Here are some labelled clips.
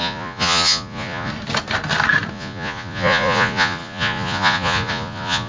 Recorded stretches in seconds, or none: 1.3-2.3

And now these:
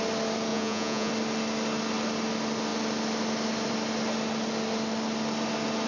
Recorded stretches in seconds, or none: 0.0-0.5; 1.1-5.9

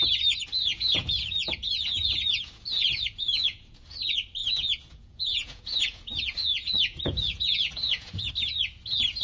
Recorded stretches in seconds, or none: 0.0-0.7; 3.8-4.4; 8.3-9.2

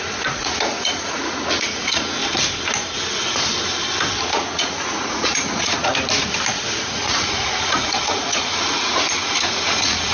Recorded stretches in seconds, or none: 2.2-4.2; 5.9-6.8

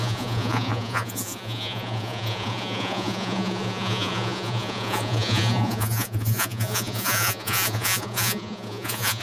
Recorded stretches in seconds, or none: none

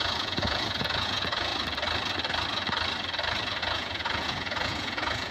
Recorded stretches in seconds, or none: 1.5-3.6

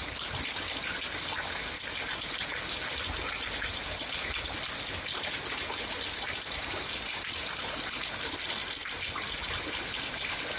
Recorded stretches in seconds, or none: 0.0-10.6